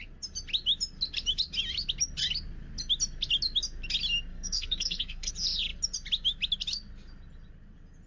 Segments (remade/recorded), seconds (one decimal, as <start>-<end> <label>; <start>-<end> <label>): 0.0-4.3 recorded; 4.3-5.3 remade; 5.3-8.1 recorded